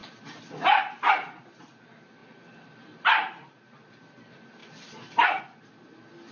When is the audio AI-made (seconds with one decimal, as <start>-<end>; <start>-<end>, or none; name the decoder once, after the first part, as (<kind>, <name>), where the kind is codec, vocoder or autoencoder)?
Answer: 0.0-1.4 (vocoder, BigVGAN v2); 2.2-3.6; 4.6-5.4

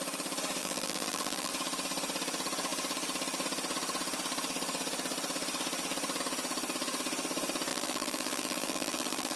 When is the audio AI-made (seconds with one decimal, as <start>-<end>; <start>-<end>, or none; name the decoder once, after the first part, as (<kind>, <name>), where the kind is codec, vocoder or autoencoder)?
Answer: 0.6-1.5 (vocoder, BigVGAN v2); 7.7-9.4